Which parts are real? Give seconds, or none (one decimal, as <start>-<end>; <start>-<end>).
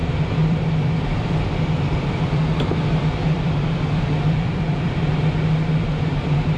5.1-6.1